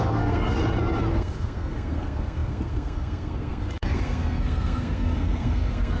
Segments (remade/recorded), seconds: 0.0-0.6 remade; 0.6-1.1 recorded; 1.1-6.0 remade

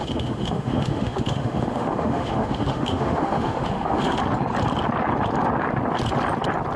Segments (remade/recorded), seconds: 0.0-4.2 remade; 4.2-6.8 recorded